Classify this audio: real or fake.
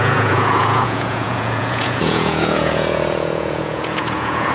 fake